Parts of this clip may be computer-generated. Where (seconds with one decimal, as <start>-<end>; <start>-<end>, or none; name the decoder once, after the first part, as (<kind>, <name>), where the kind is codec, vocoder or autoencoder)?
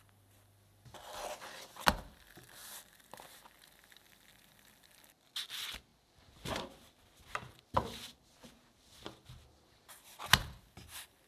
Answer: 0.0-11.3 (vocoder, BigVGAN v2)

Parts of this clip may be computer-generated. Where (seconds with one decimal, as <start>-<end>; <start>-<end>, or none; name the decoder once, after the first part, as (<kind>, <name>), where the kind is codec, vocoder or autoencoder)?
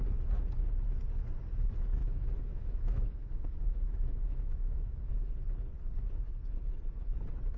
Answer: 2.0-5.1 (autoencoder, DAC-VAE)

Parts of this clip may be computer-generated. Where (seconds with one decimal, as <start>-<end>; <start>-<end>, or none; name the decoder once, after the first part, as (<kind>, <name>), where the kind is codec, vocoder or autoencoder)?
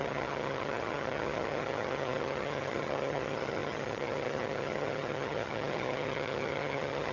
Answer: 0.0-7.1 (vocoder, HiFi-GAN)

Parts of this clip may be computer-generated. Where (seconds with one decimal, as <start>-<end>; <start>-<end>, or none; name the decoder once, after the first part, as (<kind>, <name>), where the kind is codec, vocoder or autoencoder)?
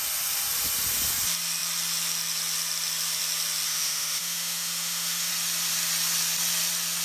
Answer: 3.7-5.3 (autoencoder, DAC-VAE)